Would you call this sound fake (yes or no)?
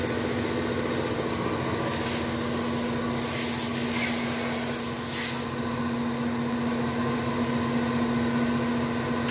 no